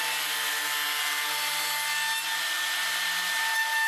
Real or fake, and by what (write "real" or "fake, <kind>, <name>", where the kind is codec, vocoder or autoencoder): real